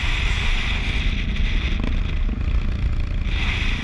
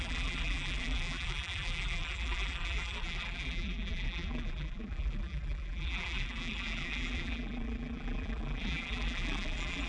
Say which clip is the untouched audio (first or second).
first